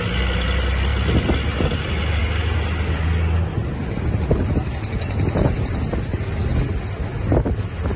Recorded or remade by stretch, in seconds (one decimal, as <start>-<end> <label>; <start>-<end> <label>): 0.0-8.0 recorded